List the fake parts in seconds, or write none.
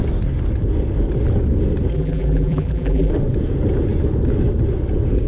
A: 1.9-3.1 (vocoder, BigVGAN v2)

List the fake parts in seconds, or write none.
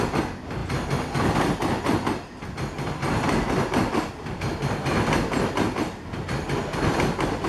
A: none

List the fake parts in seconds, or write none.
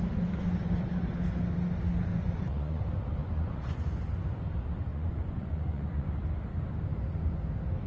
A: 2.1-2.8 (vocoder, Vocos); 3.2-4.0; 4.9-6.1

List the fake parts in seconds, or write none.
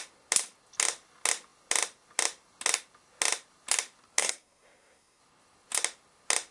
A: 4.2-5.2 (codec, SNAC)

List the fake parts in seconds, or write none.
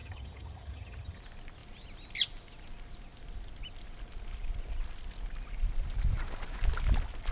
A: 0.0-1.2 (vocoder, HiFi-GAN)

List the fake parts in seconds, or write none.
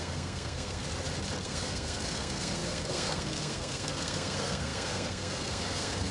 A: 0.0-0.8 (codec, SNAC); 1.4-6.1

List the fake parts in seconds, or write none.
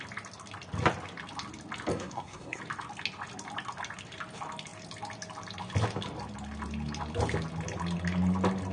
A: 1.9-2.6 (codec, SNAC)